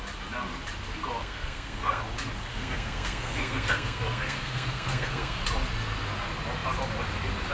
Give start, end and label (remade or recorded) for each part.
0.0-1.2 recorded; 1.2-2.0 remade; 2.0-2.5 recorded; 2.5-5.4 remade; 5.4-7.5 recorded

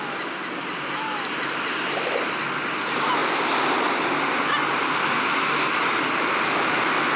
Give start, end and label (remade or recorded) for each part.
0.0-7.2 recorded